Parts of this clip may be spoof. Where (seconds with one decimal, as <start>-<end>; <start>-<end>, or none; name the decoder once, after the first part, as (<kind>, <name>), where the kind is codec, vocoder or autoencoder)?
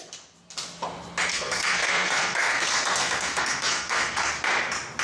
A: 1.3-4.3 (codec, SNAC)